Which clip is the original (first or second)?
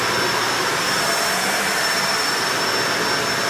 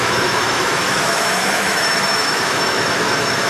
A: first